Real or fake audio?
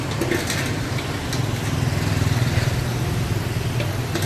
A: real